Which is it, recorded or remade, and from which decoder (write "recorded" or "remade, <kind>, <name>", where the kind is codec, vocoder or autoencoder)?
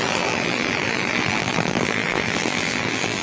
remade, vocoder, BigVGAN v2